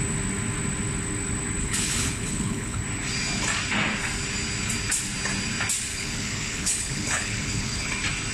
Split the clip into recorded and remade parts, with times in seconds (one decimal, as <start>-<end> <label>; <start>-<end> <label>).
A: 0.0-1.6 recorded; 1.6-2.8 remade; 2.8-5.9 recorded; 5.9-7.9 remade; 7.9-8.3 recorded